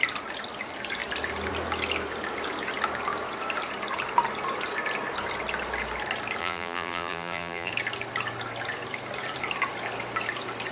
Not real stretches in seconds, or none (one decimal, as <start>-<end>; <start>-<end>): 6.4-7.7